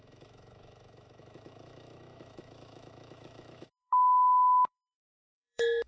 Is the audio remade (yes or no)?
yes